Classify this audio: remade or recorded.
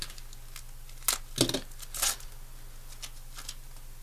recorded